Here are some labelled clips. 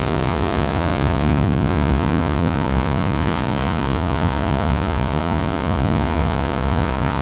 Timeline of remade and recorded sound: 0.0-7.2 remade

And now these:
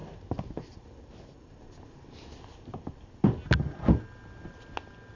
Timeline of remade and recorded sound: 0.0-5.2 recorded

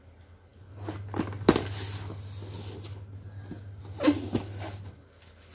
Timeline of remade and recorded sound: 0.0-5.5 recorded